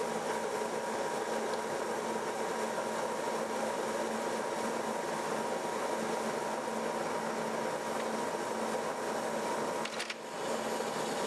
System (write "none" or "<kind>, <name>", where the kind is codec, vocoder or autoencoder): none